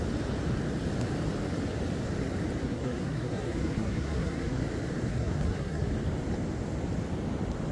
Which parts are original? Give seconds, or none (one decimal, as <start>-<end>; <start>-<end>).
0.0-2.6; 4.6-5.1; 5.9-7.7